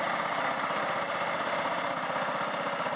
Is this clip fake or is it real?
real